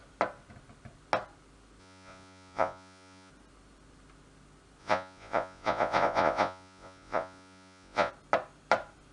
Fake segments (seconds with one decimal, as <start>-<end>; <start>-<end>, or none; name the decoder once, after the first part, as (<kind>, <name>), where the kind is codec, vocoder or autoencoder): 1.8-3.3 (vocoder, Vocos); 4.8-8.1